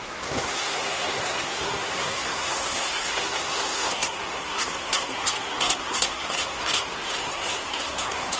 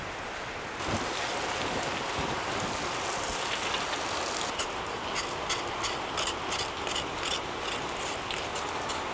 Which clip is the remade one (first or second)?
first